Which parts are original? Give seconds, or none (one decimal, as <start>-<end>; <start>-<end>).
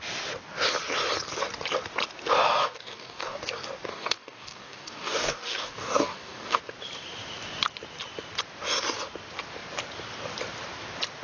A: 0.0-2.6; 3.4-3.9; 6.6-11.2